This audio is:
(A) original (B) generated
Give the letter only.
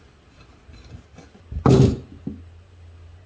A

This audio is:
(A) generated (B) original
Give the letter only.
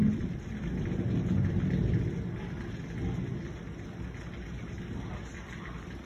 B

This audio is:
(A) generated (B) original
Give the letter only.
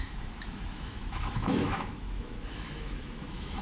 A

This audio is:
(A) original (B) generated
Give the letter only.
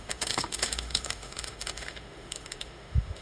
B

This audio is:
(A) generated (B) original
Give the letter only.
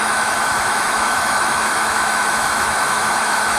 A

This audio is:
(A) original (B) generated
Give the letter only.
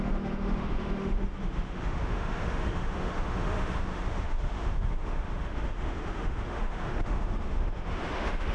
B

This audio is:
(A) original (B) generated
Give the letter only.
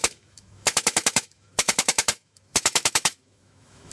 B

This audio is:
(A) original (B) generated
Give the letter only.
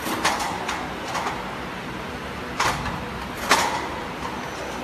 A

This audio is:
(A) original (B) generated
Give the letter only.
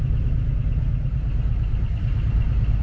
A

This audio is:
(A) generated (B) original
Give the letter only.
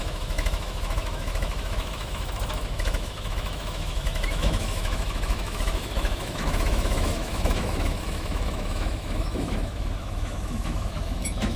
A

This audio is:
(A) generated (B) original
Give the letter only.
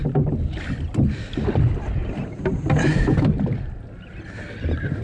B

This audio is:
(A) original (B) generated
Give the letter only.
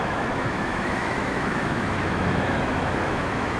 B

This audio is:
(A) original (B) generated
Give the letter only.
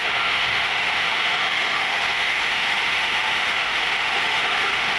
B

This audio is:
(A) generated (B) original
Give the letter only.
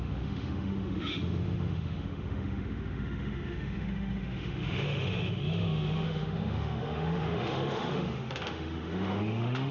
A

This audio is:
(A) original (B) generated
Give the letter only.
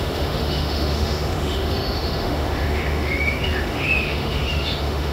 B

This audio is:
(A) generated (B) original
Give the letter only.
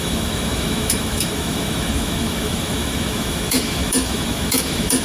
A